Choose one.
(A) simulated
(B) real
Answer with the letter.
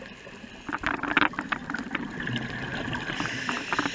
B